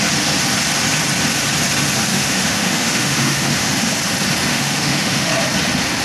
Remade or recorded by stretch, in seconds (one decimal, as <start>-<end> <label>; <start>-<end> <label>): 0.0-2.1 recorded; 2.1-3.7 remade; 3.7-4.5 recorded; 4.5-5.3 remade; 5.3-6.0 recorded